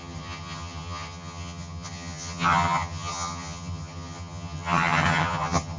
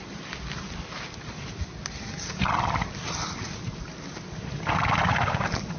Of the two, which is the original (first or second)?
second